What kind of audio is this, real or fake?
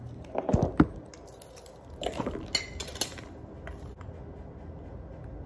real